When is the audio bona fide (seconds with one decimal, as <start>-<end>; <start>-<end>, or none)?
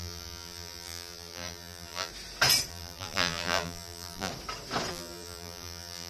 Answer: 2.1-2.7; 4.3-4.9